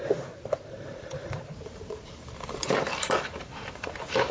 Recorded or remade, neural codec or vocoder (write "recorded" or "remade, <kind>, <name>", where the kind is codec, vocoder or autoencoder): remade, vocoder, BigVGAN v2